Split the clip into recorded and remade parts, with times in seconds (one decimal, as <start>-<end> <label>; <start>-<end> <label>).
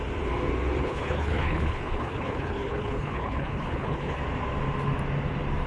0.0-0.8 recorded; 0.8-4.2 remade; 4.2-5.7 recorded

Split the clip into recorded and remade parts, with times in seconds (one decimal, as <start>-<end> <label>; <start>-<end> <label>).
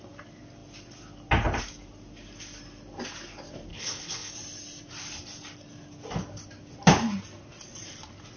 0.0-3.7 recorded; 3.7-4.3 remade; 4.3-8.4 recorded